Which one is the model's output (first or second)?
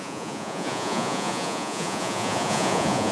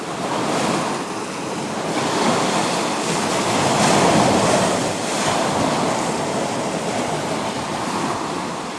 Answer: first